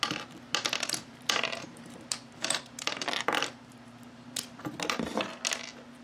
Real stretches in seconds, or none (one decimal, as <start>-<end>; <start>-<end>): 0.0-1.0; 4.6-6.0